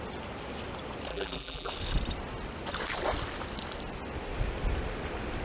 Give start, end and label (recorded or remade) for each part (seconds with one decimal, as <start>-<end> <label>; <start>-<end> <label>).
0.0-1.1 recorded; 1.1-1.7 remade; 1.7-5.4 recorded